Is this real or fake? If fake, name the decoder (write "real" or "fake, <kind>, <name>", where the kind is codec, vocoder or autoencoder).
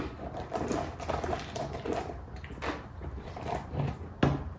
real